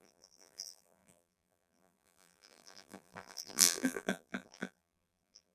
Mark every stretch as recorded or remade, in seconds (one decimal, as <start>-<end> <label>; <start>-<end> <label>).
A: 0.0-5.5 remade